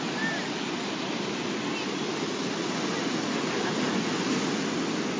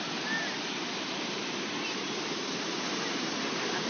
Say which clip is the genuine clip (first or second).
first